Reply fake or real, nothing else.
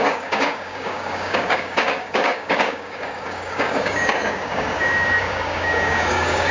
fake